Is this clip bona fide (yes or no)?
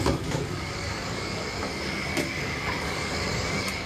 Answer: no